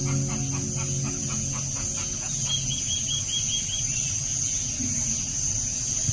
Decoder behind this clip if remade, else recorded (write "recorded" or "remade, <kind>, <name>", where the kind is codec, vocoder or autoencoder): recorded